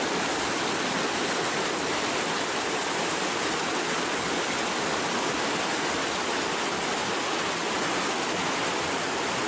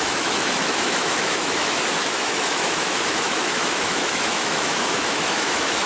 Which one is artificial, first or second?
second